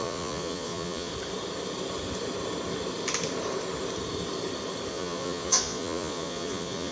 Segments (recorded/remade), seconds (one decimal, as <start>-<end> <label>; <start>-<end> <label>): 0.0-1.1 remade; 1.1-4.9 recorded; 4.9-6.9 remade